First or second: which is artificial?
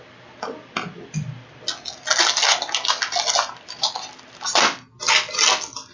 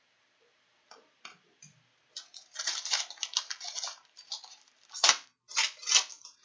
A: second